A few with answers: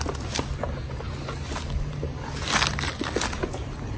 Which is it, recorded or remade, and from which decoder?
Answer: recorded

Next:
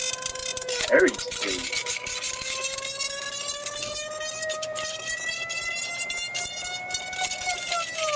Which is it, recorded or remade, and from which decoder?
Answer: recorded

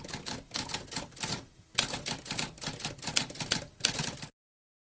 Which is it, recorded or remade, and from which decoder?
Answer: recorded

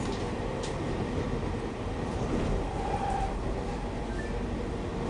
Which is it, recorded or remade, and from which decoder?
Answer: recorded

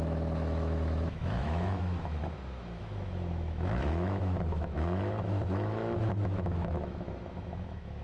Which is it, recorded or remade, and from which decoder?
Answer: remade, autoencoder, DAC-VAE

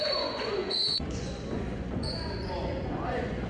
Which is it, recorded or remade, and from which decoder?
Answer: remade, vocoder, Vocos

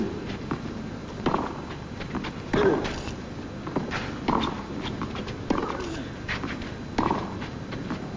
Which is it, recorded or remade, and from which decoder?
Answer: recorded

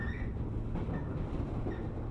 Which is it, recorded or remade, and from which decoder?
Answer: recorded